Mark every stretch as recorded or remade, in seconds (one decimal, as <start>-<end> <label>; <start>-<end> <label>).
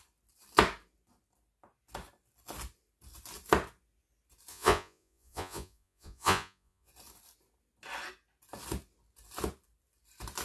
0.0-4.5 recorded; 4.5-6.9 remade; 6.9-10.4 recorded